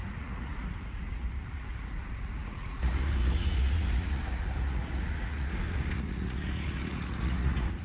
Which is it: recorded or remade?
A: remade